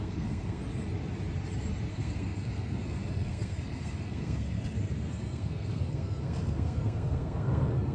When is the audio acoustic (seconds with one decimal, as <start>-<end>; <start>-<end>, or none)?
0.6-1.9